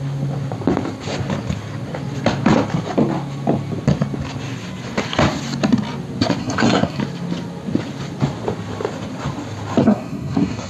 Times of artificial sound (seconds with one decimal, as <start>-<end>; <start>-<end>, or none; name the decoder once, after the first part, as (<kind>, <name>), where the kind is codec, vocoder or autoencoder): 6.4-7.0 (codec, SNAC); 9.8-10.7